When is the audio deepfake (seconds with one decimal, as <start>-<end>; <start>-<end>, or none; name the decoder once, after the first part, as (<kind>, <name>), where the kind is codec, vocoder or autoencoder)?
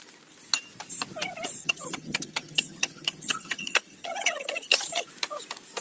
1.6-5.1 (vocoder, HiFi-GAN)